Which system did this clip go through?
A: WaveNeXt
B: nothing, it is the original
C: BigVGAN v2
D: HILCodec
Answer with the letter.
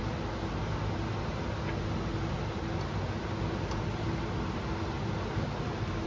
B